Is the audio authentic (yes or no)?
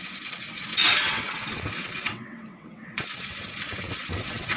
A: no